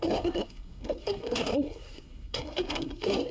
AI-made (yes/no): yes